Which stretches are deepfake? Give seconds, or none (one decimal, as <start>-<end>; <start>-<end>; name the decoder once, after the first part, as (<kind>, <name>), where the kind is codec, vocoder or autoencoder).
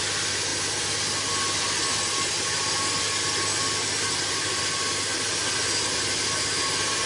none